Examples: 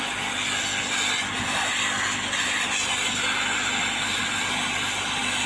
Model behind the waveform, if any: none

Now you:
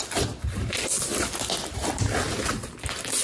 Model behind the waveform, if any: none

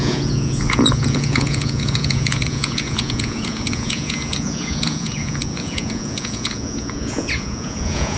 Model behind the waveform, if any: vocoder, Vocos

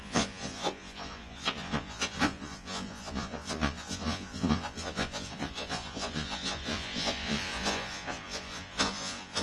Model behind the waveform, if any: vocoder, Vocos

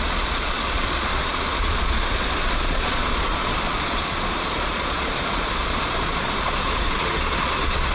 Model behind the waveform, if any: vocoder, Vocos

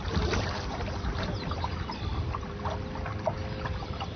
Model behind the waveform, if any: none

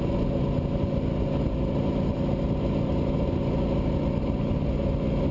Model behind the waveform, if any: none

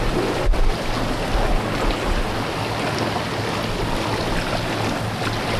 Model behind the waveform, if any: none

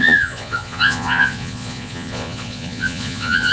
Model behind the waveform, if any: vocoder, Vocos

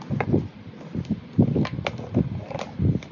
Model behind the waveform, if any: none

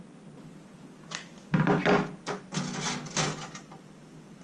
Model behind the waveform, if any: none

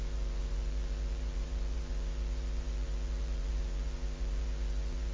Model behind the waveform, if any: vocoder, Vocos